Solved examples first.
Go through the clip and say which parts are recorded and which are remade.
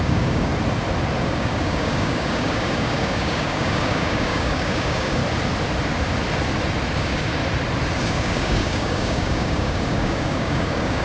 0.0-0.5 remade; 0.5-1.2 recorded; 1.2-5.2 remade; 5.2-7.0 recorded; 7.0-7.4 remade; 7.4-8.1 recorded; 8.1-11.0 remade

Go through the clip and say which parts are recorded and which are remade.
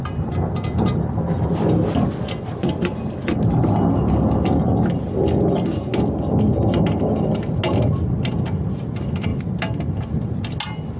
0.0-11.0 recorded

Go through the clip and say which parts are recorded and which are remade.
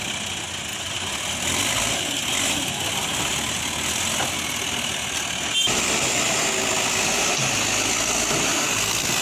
0.0-9.2 recorded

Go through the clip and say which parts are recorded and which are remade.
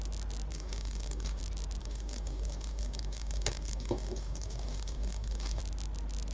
0.0-0.5 recorded; 0.5-1.4 remade; 1.4-1.8 recorded; 1.8-5.6 remade; 5.6-6.3 recorded